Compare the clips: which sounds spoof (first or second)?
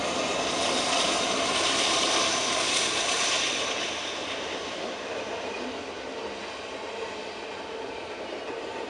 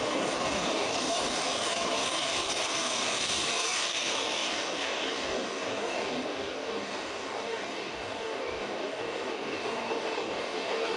second